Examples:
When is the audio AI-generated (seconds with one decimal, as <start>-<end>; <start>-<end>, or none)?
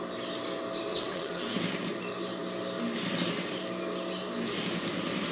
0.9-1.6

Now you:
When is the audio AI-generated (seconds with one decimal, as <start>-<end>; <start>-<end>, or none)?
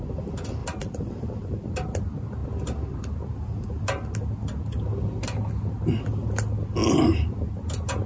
none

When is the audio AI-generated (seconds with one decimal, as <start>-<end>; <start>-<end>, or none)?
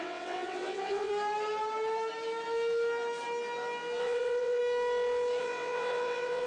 0.0-1.1; 4.0-4.6; 5.4-6.5